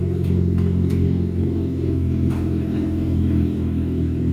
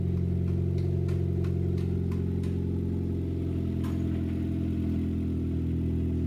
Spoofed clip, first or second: first